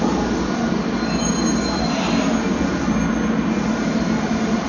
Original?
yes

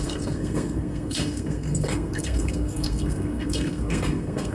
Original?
no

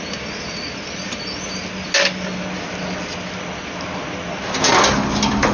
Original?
yes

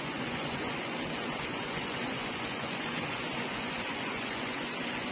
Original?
no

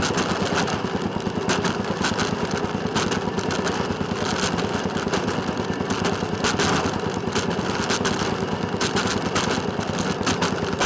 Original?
yes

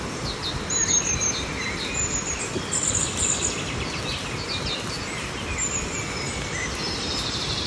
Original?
yes